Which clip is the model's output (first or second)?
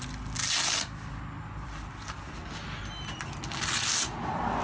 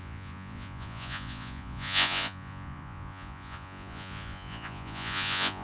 second